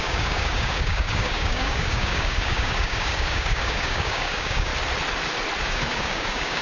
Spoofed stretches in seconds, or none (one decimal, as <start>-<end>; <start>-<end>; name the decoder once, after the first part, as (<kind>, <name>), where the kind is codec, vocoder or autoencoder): 0.0-4.7 (codec, DAC); 5.6-6.6